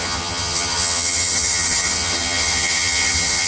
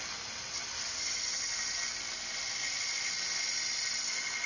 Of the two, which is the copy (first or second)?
first